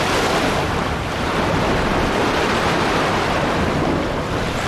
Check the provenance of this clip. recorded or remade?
recorded